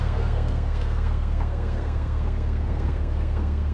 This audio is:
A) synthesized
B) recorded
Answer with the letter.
A